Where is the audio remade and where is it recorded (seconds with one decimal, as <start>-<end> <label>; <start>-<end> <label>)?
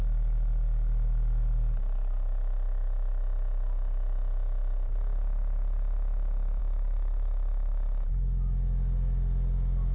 0.0-6.6 recorded; 6.6-8.1 remade; 8.1-9.9 recorded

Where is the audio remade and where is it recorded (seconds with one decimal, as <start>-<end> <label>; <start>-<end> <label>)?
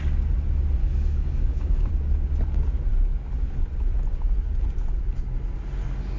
0.0-0.8 recorded; 0.8-1.9 remade; 1.9-6.2 recorded